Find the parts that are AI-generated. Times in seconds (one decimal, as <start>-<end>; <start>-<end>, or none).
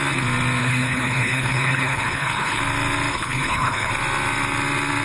0.6-2.6; 3.1-3.9